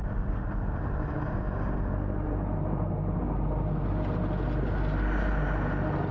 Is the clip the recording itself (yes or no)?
yes